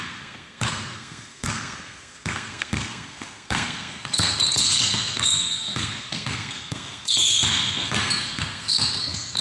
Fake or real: fake